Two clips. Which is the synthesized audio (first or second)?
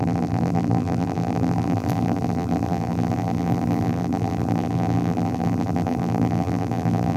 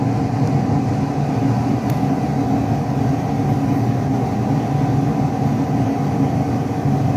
first